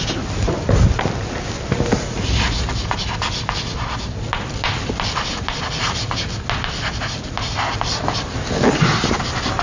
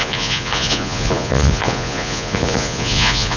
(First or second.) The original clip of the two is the first